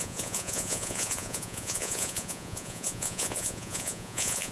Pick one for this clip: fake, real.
fake